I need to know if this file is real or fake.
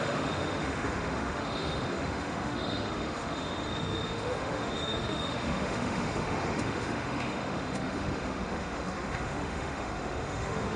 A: fake